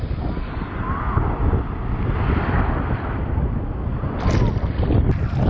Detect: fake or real real